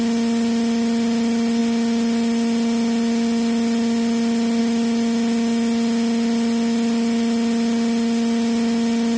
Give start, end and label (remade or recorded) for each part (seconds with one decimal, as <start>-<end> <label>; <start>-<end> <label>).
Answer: 0.0-9.2 recorded